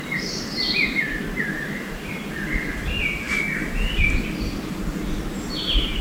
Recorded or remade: recorded